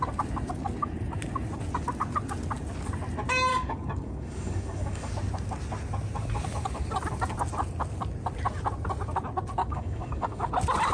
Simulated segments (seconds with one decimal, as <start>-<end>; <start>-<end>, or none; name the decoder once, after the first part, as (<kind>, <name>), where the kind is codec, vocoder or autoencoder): 3.5-5.1 (codec, DAC); 9.6-10.5